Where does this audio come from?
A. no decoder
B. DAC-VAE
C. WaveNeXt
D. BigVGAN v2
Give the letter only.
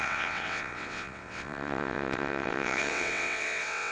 C